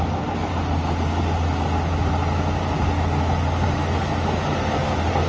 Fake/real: real